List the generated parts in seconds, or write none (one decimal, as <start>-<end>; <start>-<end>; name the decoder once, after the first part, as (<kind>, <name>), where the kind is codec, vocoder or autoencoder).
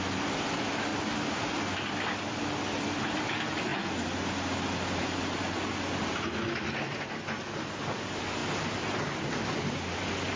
none